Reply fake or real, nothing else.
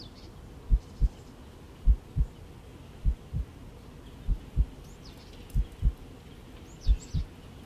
real